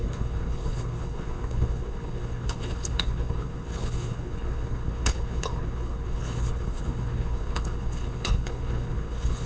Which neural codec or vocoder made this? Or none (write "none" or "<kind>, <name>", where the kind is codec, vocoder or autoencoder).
codec, HILCodec